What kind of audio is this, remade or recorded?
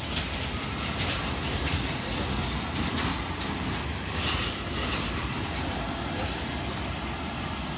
recorded